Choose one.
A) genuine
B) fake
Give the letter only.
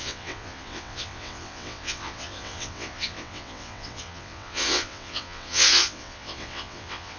B